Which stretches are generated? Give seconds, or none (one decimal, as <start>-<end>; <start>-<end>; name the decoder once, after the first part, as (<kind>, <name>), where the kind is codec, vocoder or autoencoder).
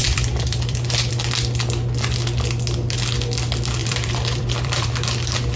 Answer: 0.0-1.1 (vocoder, BigVGAN v2); 3.8-4.9